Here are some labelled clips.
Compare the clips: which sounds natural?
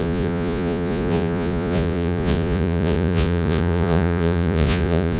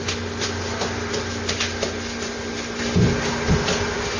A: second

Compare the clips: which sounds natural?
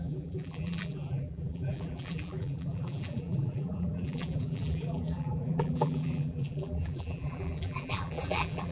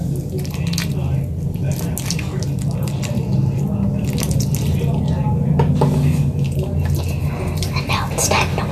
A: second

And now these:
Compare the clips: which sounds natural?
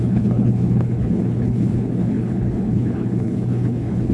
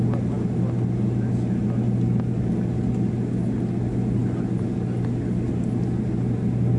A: second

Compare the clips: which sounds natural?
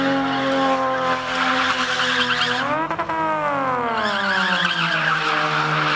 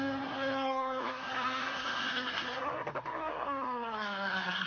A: first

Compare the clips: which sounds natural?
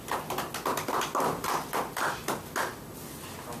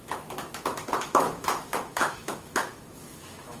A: first